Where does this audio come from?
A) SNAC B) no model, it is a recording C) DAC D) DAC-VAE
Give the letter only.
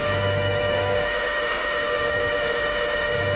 D